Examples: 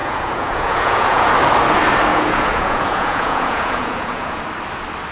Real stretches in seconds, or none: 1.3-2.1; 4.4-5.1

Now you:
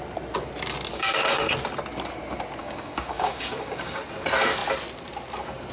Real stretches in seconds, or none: 0.0-0.9; 1.5-2.6; 4.0-5.7

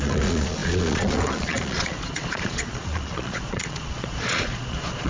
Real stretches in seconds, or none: none

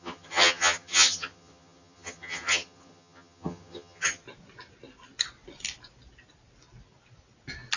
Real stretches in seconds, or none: 4.2-7.8

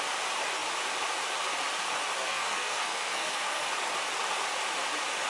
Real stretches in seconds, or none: 0.0-2.2; 3.7-5.3

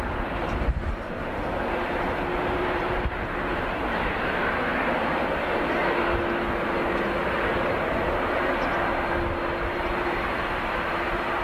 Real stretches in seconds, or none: 5.8-7.0; 8.7-10.3

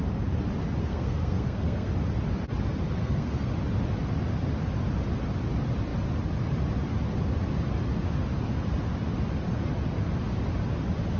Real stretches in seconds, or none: 0.0-0.8; 1.9-3.0; 3.5-11.2

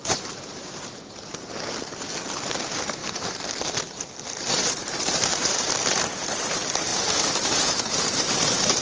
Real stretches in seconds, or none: none